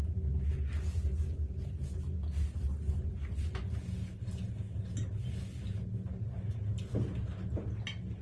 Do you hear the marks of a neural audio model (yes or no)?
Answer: no